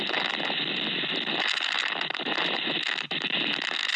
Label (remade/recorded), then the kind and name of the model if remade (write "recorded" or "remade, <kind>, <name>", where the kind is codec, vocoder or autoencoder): recorded